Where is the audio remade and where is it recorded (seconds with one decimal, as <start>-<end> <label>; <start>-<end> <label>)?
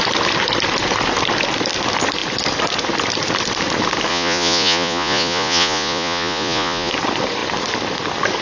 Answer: 0.0-4.1 recorded; 4.1-6.9 remade; 6.9-8.4 recorded